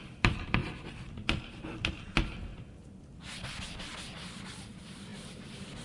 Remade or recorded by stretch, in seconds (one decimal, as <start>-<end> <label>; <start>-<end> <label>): 0.0-2.5 remade; 2.5-4.4 recorded; 4.4-5.1 remade; 5.1-5.8 recorded